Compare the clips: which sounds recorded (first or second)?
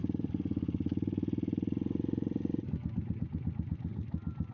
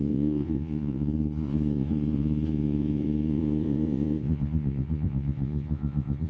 first